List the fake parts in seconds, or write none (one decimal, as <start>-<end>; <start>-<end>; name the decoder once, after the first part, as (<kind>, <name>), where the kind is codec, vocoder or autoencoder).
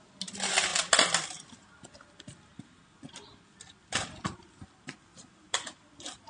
5.1-6.3 (vocoder, BigVGAN v2)